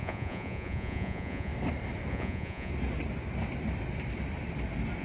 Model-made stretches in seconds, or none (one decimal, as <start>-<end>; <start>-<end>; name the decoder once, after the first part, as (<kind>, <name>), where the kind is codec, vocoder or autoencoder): 0.0-1.5 (vocoder, Vocos); 2.1-2.7